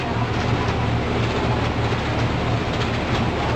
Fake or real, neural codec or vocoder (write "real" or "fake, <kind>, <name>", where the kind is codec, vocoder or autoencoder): real